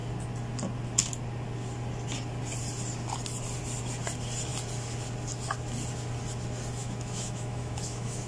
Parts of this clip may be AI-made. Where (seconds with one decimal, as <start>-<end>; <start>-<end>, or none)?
6.8-8.3